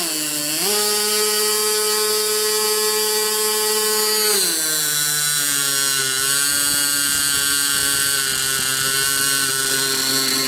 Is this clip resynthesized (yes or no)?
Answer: no